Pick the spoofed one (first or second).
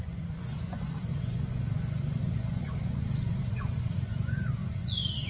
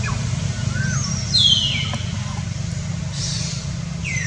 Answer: first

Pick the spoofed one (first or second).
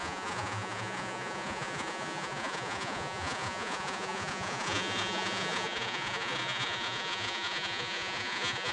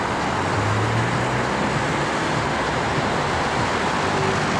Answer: first